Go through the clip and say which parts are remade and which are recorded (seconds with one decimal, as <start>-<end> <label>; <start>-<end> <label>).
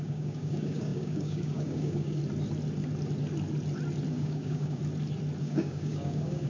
0.0-2.2 remade; 2.2-4.1 recorded; 4.1-4.8 remade; 4.8-5.4 recorded; 5.4-6.5 remade